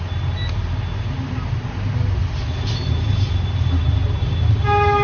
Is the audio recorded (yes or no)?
yes